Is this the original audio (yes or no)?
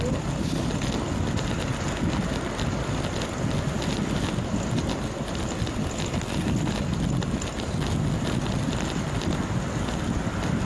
yes